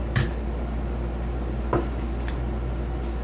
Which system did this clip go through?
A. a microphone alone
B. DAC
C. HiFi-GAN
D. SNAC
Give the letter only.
A